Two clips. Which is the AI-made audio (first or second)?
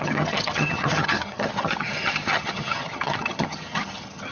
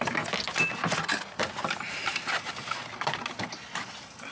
first